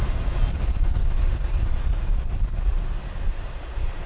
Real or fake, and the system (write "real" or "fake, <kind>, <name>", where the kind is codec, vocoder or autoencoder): fake, vocoder, BigVGAN v2